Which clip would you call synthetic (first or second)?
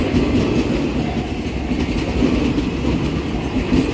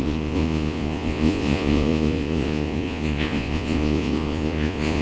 second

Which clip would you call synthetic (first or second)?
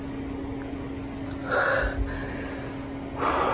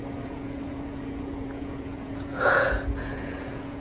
second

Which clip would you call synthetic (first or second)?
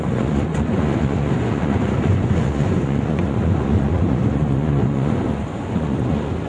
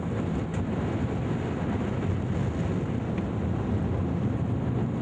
first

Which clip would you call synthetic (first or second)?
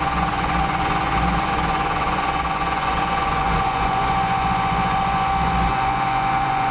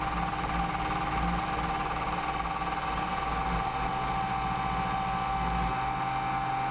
first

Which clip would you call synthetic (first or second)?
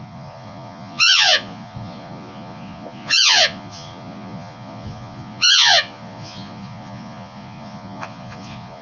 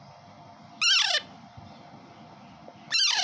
first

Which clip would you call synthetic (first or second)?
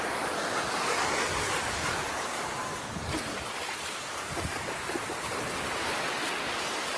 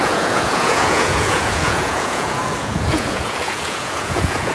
second